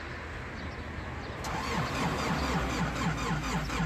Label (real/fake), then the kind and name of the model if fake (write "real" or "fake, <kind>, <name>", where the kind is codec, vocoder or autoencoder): real